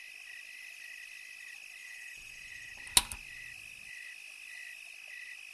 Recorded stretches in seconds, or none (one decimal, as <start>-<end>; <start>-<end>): 0.0-1.8; 2.7-5.5